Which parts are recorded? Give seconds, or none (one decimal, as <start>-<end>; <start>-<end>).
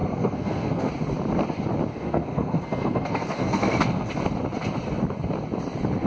0.9-1.9; 4.1-6.1